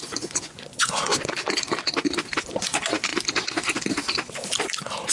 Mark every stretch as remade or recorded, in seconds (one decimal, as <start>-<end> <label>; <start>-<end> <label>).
0.0-1.1 remade; 1.1-2.6 recorded; 2.6-3.1 remade; 3.1-5.1 recorded